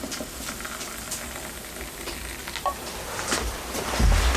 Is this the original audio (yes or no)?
yes